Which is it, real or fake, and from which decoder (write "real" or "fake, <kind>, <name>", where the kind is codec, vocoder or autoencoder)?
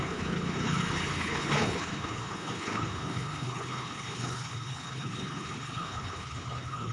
fake, codec, HILCodec